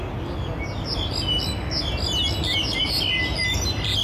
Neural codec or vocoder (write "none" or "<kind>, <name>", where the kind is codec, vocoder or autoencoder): none